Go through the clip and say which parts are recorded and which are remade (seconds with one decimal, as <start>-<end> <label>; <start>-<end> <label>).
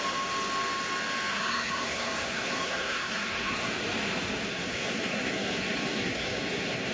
0.0-1.3 recorded; 1.3-3.7 remade; 3.7-4.5 recorded; 4.5-6.9 remade